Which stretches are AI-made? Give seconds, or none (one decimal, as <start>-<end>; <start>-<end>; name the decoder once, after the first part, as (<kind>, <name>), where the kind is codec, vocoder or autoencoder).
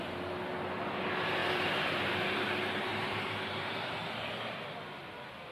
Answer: 1.4-2.5 (vocoder, BigVGAN v2); 2.9-4.0